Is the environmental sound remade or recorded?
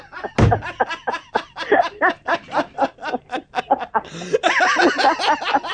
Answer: recorded